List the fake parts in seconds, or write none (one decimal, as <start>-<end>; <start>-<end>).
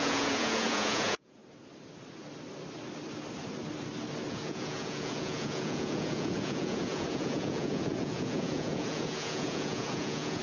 0.0-1.4; 4.3-10.4